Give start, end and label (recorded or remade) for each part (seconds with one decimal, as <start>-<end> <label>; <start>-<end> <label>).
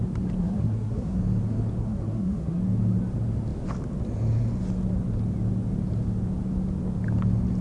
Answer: 0.0-0.4 recorded; 0.4-1.2 remade; 1.2-1.8 recorded; 1.8-2.6 remade; 2.6-7.6 recorded